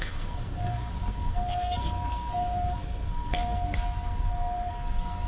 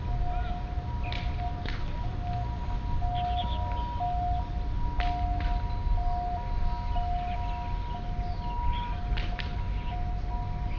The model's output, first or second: first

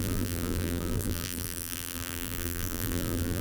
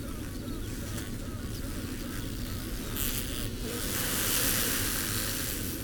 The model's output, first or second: first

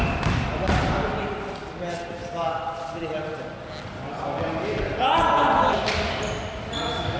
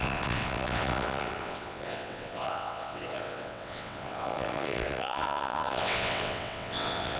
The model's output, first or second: second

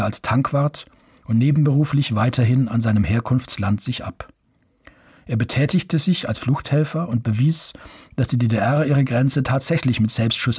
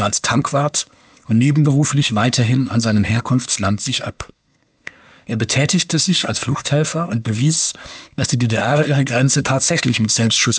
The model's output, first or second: second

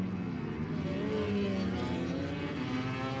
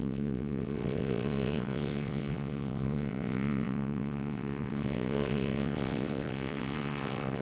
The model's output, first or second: second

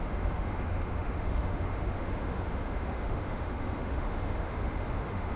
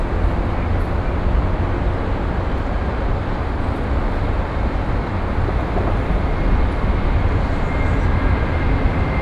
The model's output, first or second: first